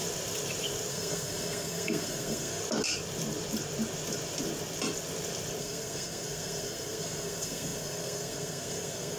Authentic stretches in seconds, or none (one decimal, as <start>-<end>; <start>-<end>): 0.0-0.9; 2.6-5.6